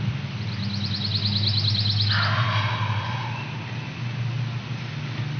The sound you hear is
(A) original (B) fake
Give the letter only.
A